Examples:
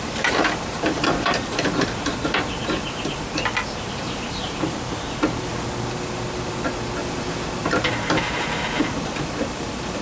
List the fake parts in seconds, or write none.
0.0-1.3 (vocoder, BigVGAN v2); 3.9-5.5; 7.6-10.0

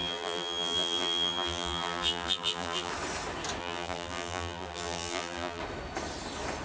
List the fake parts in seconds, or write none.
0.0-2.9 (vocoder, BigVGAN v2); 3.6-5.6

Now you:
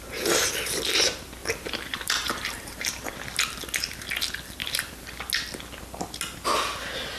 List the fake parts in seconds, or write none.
1.4-3.1 (vocoder, BigVGAN v2); 4.6-5.2

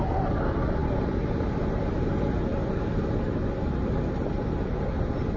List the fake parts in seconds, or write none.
none

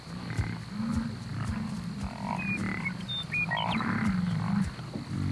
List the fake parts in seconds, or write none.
none

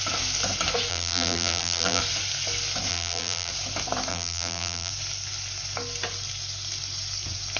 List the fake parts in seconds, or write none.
0.9-2.0 (vocoder, BigVGAN v2); 2.9-3.5; 4.1-4.9

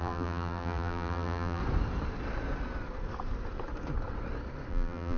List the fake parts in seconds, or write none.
0.0-1.6 (vocoder, BigVGAN v2); 4.7-5.2